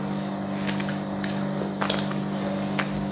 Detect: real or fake real